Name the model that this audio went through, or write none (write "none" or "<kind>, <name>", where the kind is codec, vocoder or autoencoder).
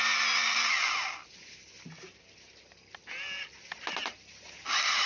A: none